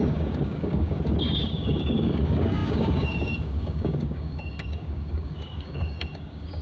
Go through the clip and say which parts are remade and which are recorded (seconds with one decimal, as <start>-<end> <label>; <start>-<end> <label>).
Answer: 0.0-6.6 remade